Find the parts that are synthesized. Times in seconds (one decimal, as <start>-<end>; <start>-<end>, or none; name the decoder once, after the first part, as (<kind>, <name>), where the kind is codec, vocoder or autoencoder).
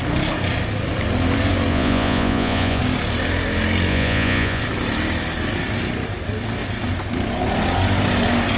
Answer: 1.7-2.8 (vocoder, Vocos); 3.9-4.6